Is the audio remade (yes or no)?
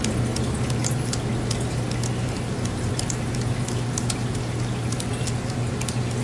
no